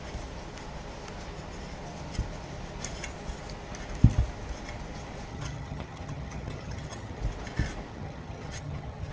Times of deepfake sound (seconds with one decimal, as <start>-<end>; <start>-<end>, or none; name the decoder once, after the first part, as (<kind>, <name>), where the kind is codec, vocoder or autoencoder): 5.3-7.2 (vocoder, HiFi-GAN); 7.9-9.1